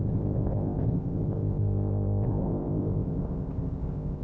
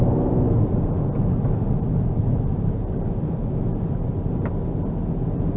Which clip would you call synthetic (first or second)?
first